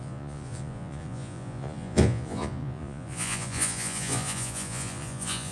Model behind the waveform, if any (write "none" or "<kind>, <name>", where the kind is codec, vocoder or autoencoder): vocoder, Vocos